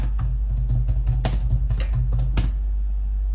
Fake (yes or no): no